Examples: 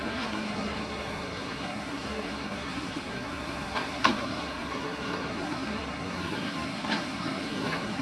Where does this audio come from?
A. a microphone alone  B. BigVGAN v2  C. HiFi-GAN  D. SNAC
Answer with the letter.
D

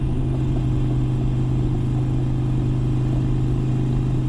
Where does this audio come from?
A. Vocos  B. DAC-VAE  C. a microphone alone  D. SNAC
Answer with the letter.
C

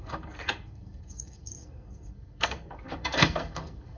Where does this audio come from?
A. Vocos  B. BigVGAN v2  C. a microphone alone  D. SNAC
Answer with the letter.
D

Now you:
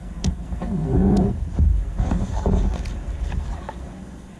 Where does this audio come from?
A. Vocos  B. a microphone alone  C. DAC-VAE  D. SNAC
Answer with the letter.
D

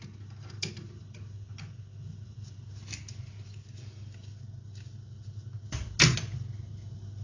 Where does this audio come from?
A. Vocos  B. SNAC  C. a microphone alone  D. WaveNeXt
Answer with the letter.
C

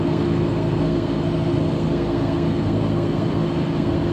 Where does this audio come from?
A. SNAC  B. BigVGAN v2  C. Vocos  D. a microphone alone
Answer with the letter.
A